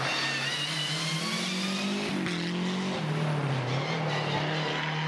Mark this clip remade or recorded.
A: recorded